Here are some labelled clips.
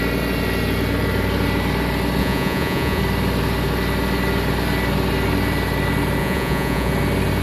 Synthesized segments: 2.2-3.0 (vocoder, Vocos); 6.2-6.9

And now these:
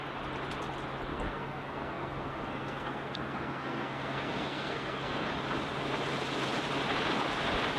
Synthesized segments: 1.1-5.3 (codec, SNAC)

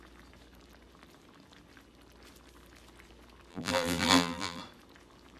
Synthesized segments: 3.5-4.6 (vocoder, BigVGAN v2)

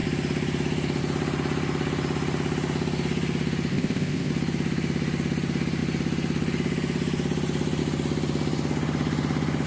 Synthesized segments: 3.7-4.3 (codec, ZipCodec)

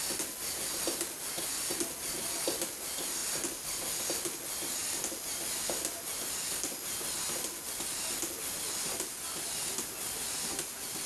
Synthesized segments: none